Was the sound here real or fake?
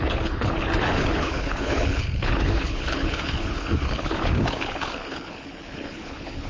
fake